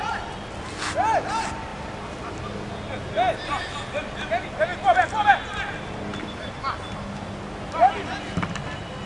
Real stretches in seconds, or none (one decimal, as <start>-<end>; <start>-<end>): 0.0-9.1